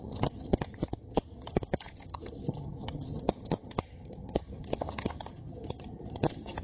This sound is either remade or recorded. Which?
remade